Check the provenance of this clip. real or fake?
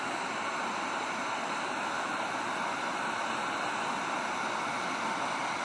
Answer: real